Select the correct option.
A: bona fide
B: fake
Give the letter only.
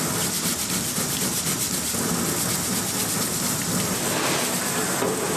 A